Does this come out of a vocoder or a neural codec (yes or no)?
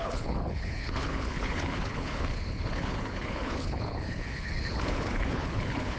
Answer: yes